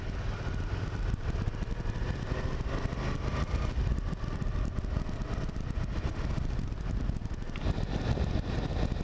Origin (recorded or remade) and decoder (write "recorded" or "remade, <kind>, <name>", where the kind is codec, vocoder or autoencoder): recorded